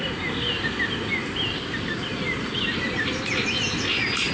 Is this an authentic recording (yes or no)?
yes